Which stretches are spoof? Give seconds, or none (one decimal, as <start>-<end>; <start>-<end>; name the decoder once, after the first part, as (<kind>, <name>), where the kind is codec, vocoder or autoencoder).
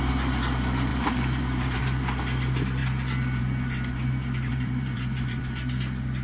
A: 0.9-1.8 (vocoder, BigVGAN v2); 4.5-5.4